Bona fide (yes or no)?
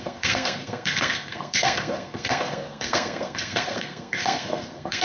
no